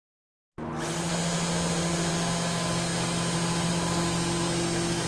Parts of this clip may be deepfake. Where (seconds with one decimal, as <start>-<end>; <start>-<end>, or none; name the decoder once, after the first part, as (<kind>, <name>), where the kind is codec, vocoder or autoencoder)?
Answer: none